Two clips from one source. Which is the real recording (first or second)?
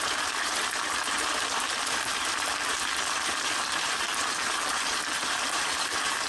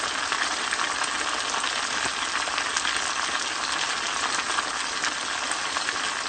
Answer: second